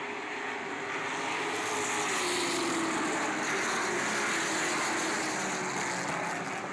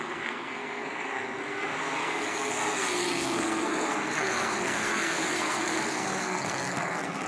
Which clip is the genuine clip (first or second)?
first